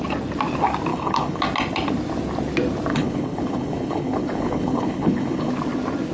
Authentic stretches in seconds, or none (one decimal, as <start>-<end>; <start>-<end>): 0.0-0.9; 1.4-2.9; 5.5-6.1